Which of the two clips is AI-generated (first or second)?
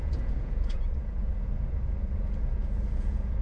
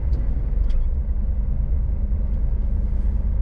first